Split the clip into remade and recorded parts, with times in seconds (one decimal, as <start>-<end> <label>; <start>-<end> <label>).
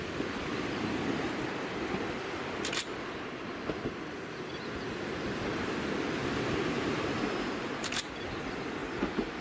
0.0-6.2 recorded; 6.2-8.0 remade; 8.0-8.8 recorded; 8.8-9.4 remade